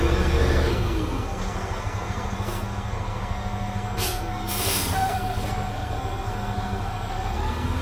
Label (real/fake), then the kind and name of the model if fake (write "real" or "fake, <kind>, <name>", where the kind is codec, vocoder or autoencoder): fake, codec, SNAC